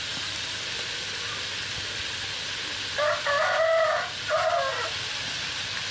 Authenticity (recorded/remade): recorded